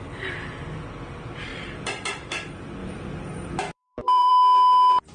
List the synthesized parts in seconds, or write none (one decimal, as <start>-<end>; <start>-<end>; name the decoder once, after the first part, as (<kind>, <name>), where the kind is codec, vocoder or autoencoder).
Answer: 1.5-2.1 (vocoder, BigVGAN v2); 2.8-4.3